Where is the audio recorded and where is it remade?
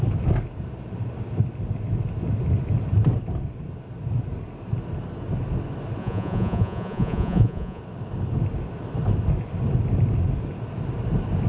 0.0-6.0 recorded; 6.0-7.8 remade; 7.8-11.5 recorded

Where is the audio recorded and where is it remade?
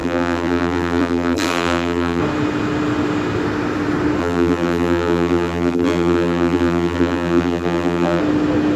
0.0-2.2 remade; 2.2-4.2 recorded; 4.2-8.2 remade; 8.2-8.8 recorded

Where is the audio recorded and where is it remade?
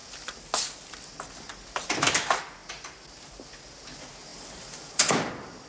0.0-4.3 recorded; 4.3-5.3 remade; 5.3-5.7 recorded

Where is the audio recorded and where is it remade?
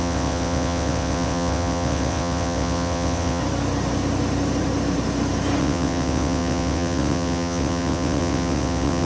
0.0-3.4 remade; 3.4-5.6 recorded; 5.6-9.1 remade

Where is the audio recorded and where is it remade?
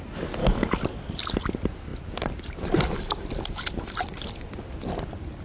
0.0-0.4 recorded; 0.4-1.1 remade; 1.1-5.4 recorded